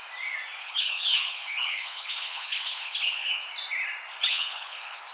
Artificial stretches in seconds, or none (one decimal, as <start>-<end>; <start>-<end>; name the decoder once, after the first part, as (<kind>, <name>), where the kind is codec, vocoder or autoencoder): 0.6-3.3 (codec, HILCodec); 4.2-5.1